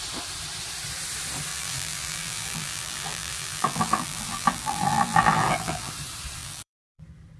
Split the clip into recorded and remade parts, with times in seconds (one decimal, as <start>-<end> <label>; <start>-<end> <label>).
0.0-1.5 recorded; 1.5-5.9 remade; 5.9-6.4 recorded; 6.4-7.0 remade; 7.0-7.4 recorded